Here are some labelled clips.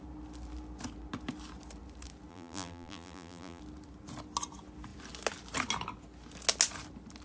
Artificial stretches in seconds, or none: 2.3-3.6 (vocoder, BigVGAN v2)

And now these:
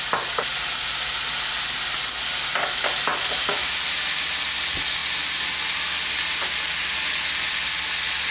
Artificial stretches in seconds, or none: none

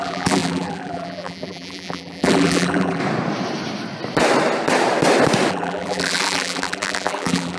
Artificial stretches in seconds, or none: 0.0-3.0 (vocoder, BigVGAN v2); 5.5-7.6

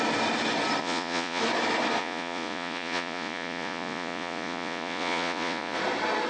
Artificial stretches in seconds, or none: 0.8-1.4 (vocoder, Vocos); 2.0-5.8

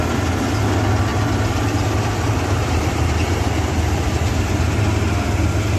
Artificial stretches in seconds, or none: 1.1-4.6 (vocoder, BigVGAN v2)